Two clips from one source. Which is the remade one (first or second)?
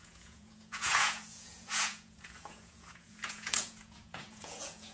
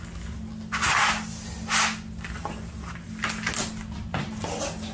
first